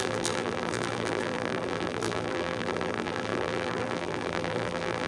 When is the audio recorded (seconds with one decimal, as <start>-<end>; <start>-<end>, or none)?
none